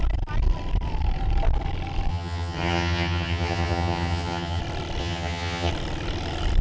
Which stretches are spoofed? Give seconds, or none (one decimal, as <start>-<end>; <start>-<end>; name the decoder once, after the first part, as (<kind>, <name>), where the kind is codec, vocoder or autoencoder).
2.1-4.6 (vocoder, HiFi-GAN); 5.0-5.7